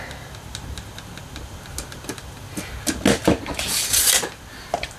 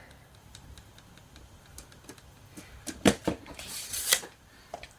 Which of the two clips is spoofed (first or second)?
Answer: second